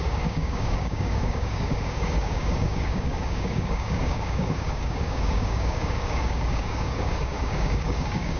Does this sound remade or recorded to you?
remade